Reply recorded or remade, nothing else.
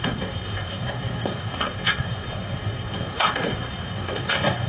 remade